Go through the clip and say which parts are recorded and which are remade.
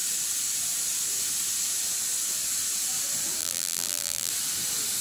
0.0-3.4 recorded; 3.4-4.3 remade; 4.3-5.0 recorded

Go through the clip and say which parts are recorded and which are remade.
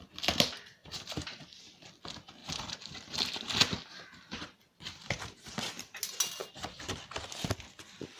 0.0-0.8 recorded; 0.8-1.4 remade; 1.4-2.4 recorded; 2.4-6.0 remade; 6.0-6.4 recorded; 6.4-7.0 remade; 7.0-8.2 recorded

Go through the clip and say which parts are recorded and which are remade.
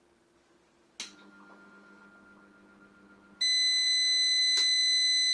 0.0-5.3 recorded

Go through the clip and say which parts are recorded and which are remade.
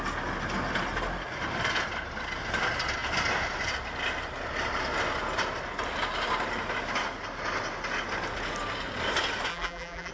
0.0-9.5 recorded; 9.5-10.1 remade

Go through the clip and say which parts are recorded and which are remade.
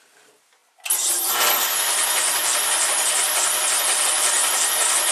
0.0-5.1 recorded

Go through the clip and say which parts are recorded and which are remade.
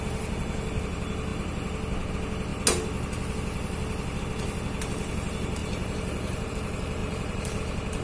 0.0-5.6 recorded; 5.6-6.5 remade; 6.5-7.0 recorded; 7.0-7.6 remade; 7.6-8.0 recorded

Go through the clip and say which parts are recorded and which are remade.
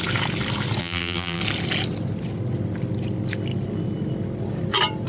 0.0-0.8 recorded; 0.8-1.4 remade; 1.4-5.1 recorded